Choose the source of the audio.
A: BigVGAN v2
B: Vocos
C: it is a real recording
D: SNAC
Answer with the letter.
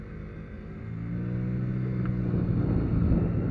C